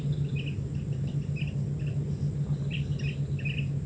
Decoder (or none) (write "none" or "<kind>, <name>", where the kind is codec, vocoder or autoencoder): none